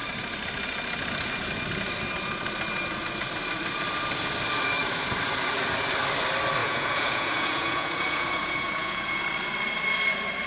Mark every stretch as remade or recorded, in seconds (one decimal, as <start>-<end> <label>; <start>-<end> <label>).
0.0-6.6 recorded; 6.6-9.2 remade; 9.2-10.5 recorded